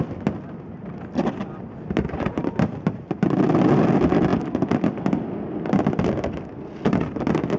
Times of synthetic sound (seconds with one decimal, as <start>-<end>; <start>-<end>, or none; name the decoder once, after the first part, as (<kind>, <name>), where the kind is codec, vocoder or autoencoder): none